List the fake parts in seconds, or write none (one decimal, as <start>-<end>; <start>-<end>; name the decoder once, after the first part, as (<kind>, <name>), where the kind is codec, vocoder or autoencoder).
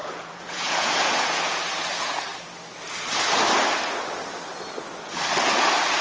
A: 0.0-2.3 (vocoder, Vocos)